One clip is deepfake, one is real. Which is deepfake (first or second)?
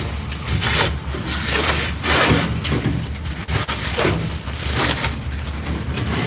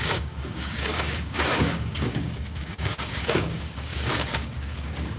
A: second